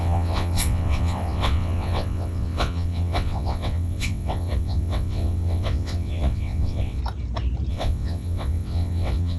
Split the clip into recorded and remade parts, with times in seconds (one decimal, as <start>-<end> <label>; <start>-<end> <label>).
0.0-7.0 remade; 7.0-7.7 recorded; 7.7-9.4 remade